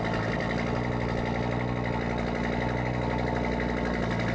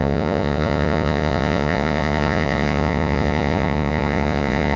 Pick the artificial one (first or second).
second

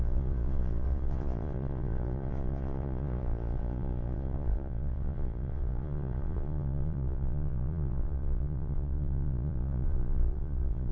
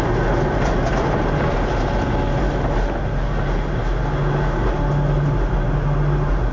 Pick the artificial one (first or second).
first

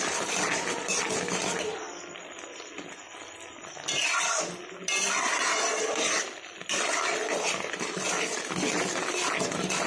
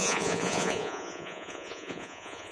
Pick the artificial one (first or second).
second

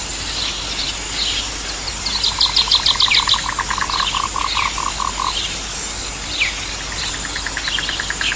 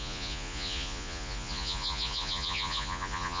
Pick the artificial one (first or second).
second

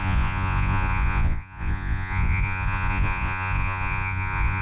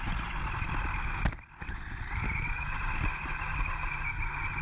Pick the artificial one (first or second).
first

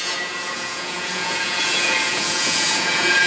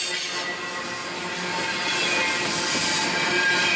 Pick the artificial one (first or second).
first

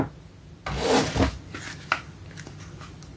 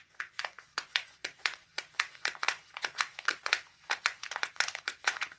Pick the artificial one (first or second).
second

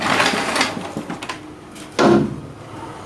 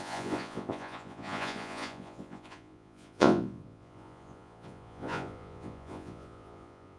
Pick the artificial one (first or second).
second